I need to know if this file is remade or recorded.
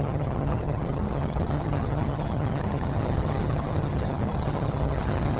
remade